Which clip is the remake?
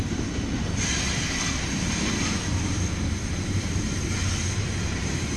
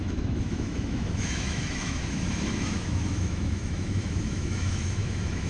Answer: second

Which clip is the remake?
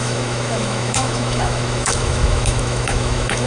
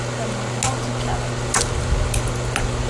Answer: first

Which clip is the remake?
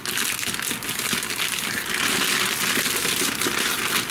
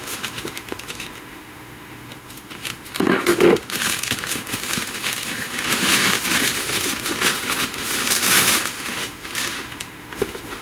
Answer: second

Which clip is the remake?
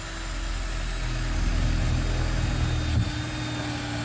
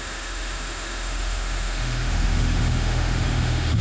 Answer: second